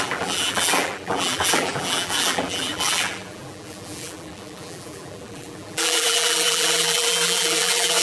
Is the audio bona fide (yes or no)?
no